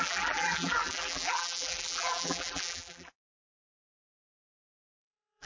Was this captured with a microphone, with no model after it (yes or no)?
no